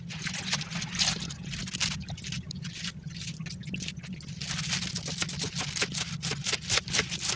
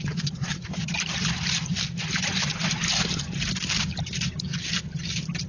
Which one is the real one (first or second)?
first